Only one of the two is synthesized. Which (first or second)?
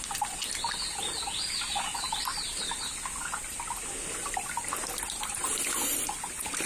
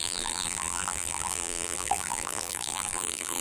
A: second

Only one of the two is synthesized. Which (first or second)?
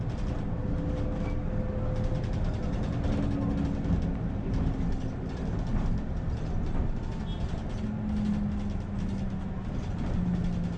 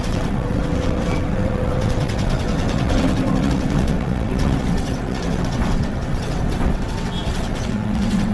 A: second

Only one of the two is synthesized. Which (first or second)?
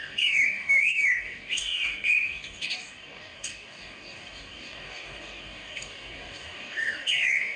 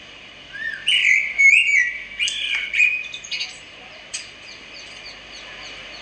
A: first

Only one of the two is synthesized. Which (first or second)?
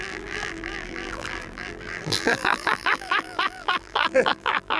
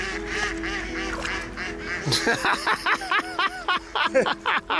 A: first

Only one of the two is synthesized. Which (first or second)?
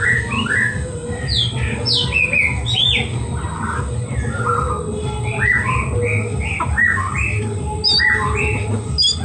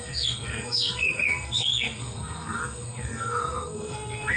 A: second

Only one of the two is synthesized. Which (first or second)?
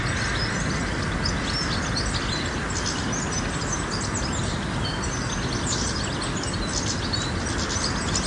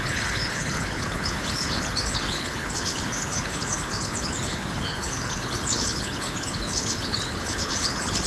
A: second